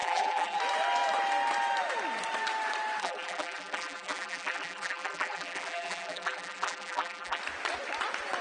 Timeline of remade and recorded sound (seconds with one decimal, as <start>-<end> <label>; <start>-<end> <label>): 0.0-0.6 remade; 0.6-3.0 recorded; 3.0-7.4 remade; 7.4-8.4 recorded